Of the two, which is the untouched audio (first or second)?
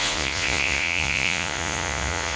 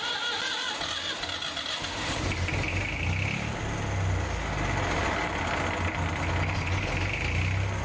second